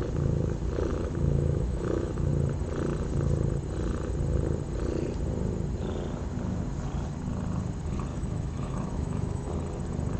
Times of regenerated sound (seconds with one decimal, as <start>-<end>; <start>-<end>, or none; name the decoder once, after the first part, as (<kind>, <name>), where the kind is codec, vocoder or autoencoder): 0.9-2.3 (autoencoder, DAC-VAE); 8.1-9.5